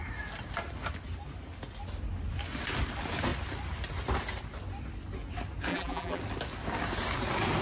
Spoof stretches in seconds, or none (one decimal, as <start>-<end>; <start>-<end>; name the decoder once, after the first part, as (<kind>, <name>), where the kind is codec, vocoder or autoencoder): 5.7-6.2 (vocoder, BigVGAN v2)